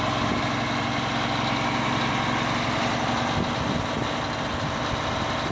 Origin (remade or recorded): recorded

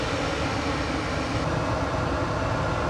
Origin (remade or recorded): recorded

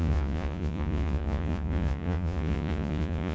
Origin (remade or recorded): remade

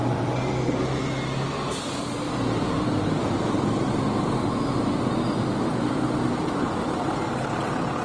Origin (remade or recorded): recorded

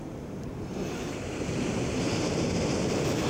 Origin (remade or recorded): remade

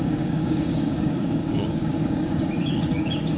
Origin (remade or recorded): remade